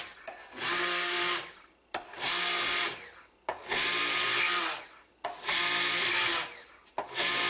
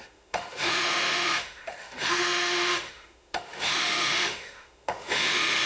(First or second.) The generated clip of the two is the second